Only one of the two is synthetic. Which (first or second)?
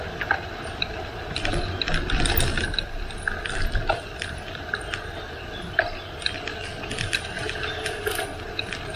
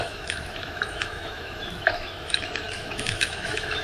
second